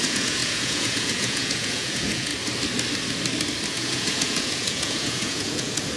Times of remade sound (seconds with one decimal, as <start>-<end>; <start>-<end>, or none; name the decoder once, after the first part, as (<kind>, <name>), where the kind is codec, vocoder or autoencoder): 0.0-2.3 (vocoder, Vocos); 3.7-6.0